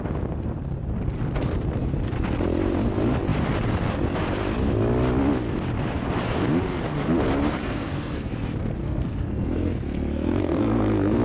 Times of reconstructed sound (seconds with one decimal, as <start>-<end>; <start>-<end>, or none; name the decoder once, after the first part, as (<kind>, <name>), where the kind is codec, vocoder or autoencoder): 7.6-8.3 (codec, SNAC); 8.8-11.2